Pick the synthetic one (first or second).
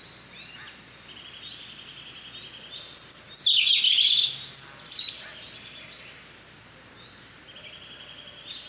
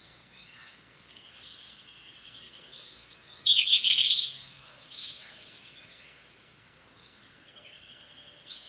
second